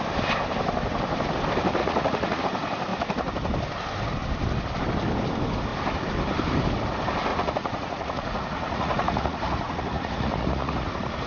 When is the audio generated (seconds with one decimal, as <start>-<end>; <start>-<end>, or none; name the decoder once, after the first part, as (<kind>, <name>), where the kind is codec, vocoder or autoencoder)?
1.8-2.4 (vocoder, Vocos); 7.3-11.3